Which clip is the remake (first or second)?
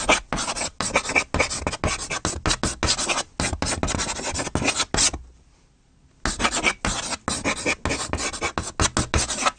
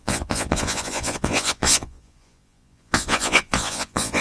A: second